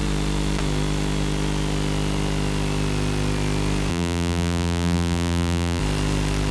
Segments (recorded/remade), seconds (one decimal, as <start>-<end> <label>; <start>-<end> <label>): 0.0-3.9 recorded; 3.9-5.8 remade; 5.8-6.5 recorded